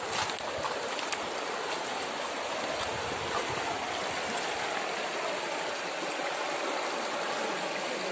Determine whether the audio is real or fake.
real